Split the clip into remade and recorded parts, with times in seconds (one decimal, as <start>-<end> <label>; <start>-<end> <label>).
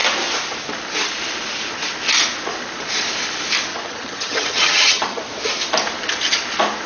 0.0-3.7 recorded; 3.7-5.2 remade; 5.2-6.9 recorded